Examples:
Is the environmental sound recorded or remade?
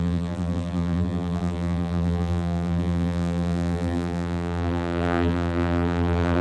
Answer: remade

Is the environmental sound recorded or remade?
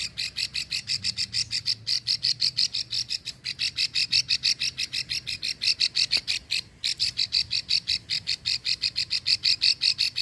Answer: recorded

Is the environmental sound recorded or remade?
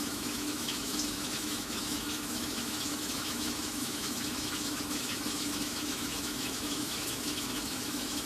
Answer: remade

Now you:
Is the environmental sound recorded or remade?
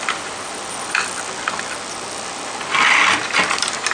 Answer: recorded